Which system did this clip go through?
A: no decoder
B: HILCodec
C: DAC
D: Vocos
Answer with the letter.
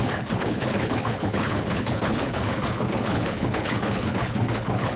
B